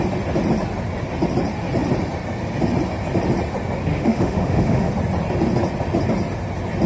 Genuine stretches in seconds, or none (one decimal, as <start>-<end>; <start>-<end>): 0.0-3.9; 4.9-6.9